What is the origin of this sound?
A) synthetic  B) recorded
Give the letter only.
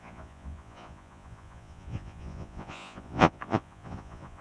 A